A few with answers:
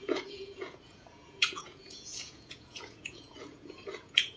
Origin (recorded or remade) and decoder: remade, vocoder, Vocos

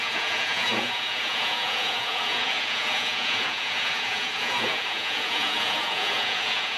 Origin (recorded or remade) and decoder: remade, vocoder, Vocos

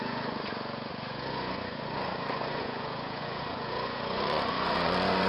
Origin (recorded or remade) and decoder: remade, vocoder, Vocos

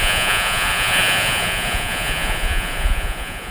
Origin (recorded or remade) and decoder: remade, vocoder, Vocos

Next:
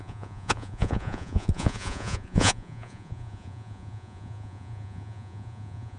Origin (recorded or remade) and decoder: remade, vocoder, Vocos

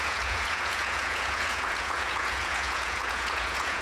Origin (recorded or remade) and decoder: remade, vocoder, Vocos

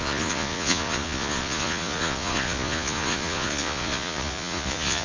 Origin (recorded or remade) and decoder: remade, vocoder, Vocos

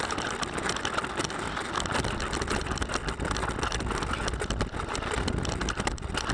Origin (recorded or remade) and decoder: recorded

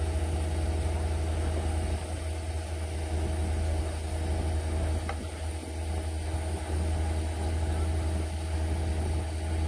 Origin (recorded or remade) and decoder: recorded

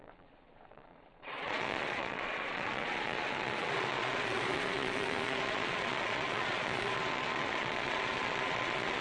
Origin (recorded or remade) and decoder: remade, vocoder, Vocos